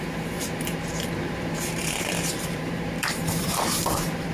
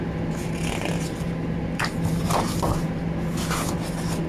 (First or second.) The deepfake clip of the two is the first